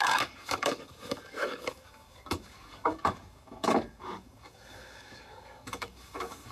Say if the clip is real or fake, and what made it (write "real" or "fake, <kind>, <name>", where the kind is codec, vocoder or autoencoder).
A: fake, codec, DAC